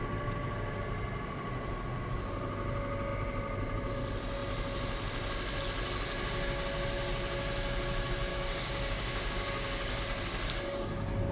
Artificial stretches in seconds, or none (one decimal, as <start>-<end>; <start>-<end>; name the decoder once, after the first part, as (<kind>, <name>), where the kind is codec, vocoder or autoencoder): 8.3-10.0 (codec, DAC)